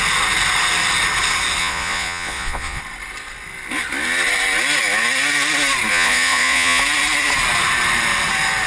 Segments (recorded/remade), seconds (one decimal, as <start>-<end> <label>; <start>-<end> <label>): 0.0-1.6 recorded; 1.6-2.8 remade; 2.8-5.9 recorded; 5.9-6.8 remade; 6.8-8.7 recorded